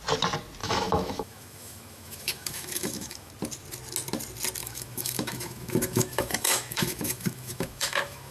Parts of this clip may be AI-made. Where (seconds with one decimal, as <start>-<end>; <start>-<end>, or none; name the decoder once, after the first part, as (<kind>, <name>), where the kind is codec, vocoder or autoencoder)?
0.6-3.3 (autoencoder, DAC-VAE); 4.6-8.3